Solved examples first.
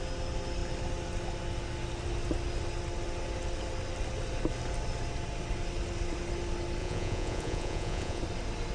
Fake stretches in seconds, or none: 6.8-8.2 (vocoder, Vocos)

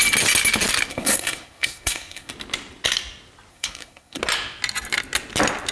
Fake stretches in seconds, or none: 0.9-2.3 (codec, SNAC); 3.5-4.2